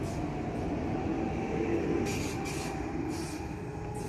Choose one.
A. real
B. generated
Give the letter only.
A